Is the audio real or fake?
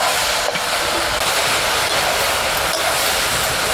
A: real